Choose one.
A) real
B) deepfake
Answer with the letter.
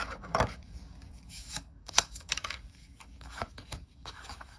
B